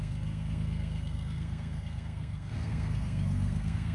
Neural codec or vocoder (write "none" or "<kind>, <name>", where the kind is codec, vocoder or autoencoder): codec, SNAC